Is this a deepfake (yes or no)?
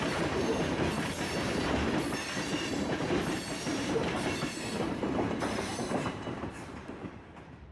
yes